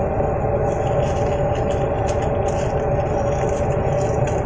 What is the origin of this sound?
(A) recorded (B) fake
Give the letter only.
A